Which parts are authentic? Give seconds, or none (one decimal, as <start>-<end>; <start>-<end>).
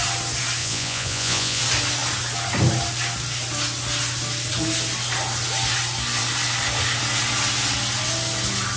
0.0-0.6; 1.6-8.8